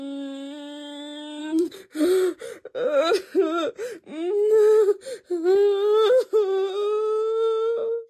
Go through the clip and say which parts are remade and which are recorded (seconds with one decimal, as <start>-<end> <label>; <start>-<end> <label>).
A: 0.0-1.4 recorded; 1.4-2.0 remade; 2.0-8.1 recorded